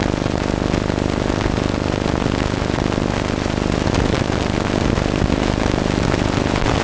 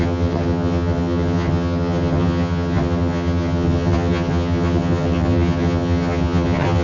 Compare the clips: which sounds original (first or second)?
first